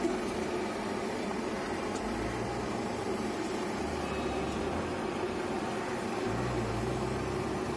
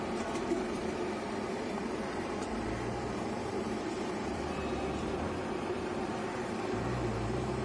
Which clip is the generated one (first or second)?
second